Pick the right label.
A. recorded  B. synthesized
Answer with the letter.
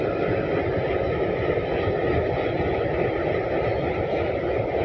A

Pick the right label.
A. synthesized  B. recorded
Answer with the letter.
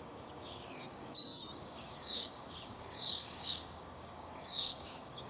A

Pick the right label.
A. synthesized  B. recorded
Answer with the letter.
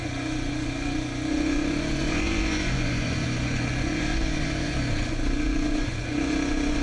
A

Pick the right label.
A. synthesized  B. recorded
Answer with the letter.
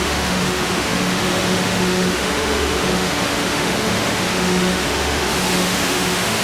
A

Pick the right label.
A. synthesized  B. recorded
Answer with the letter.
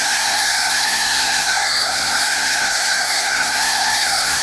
A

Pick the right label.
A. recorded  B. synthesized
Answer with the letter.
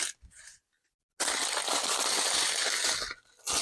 A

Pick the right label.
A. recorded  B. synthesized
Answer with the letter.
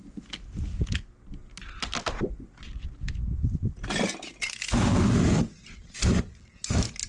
A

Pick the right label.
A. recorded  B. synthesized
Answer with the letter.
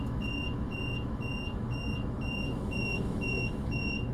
B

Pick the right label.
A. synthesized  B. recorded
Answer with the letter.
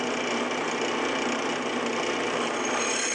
B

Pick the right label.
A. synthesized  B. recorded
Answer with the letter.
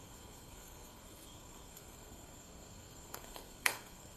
A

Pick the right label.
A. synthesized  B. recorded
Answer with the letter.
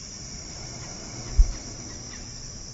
B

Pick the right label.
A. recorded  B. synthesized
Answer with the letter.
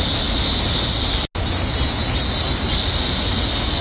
A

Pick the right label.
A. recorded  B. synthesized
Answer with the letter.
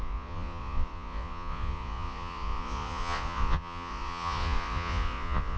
B